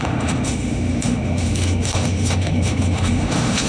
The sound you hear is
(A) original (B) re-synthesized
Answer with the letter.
B